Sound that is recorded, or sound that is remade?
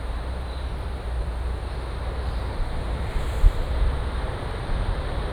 remade